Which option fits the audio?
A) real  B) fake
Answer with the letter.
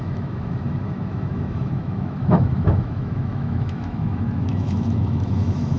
B